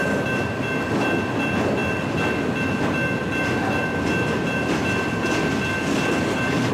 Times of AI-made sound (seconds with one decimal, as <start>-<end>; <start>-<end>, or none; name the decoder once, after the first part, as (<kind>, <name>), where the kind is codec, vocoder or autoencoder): 0.0-0.6 (vocoder, BigVGAN v2)